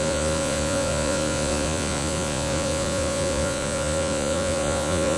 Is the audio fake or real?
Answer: fake